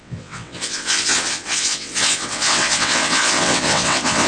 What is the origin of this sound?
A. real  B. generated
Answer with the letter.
B